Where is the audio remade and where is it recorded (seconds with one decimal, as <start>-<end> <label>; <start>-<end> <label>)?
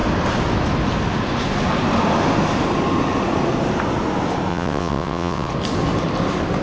0.0-4.5 recorded; 4.5-5.5 remade; 5.5-6.6 recorded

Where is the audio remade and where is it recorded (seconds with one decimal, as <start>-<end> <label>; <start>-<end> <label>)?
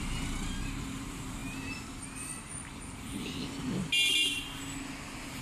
0.0-5.4 recorded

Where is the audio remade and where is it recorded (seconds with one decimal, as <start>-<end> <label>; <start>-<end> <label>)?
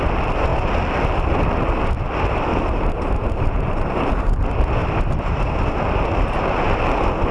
0.0-2.5 recorded; 2.5-4.1 remade; 4.1-4.8 recorded; 4.8-5.5 remade; 5.5-7.3 recorded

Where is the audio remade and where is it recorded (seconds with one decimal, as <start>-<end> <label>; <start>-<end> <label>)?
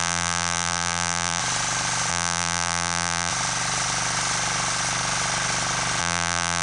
0.0-1.4 remade; 1.4-2.1 recorded; 2.1-3.3 remade; 3.3-6.0 recorded; 6.0-6.6 remade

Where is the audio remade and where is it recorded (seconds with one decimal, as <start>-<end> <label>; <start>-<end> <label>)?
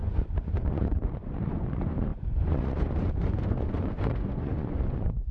0.0-5.3 remade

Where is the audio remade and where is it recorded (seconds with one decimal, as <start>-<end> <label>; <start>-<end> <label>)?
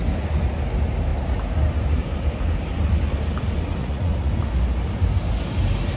0.0-3.8 recorded; 3.8-4.3 remade; 4.3-6.0 recorded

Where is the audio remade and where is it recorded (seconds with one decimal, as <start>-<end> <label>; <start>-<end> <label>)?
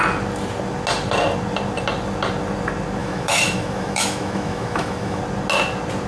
0.0-3.0 recorded; 3.0-5.2 remade; 5.2-6.1 recorded